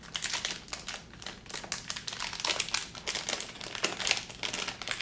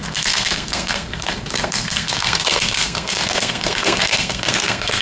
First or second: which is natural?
first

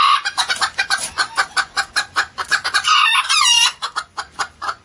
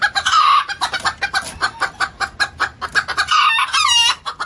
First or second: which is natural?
second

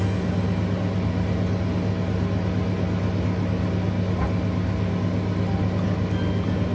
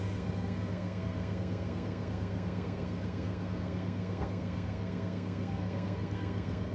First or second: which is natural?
first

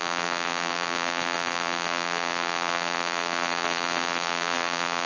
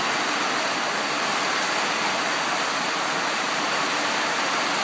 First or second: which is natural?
second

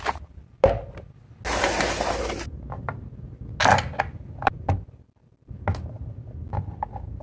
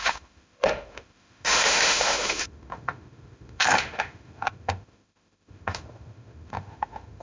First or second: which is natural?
first